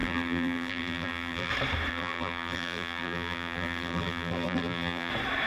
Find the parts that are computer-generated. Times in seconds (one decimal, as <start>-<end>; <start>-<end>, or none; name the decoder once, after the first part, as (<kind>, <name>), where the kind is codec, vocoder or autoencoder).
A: 0.0-1.5 (vocoder, BigVGAN v2); 1.9-5.1